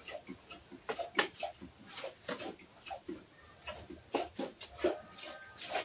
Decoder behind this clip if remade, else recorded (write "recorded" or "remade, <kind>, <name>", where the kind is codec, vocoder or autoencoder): recorded